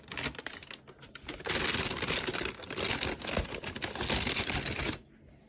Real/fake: real